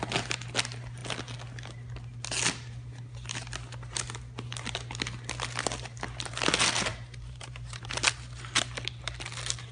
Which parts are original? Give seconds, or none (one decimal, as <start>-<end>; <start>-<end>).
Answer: 0.0-6.9; 7.9-9.7